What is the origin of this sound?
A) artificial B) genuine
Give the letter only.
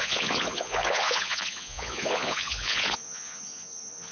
A